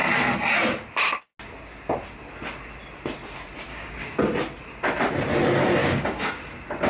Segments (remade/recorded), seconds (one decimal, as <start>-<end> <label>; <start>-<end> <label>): 0.0-3.7 recorded; 3.7-4.2 remade; 4.2-5.8 recorded; 5.8-6.4 remade; 6.4-6.9 recorded